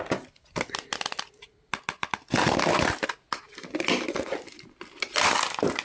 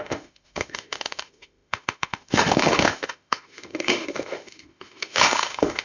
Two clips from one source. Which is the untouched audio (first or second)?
first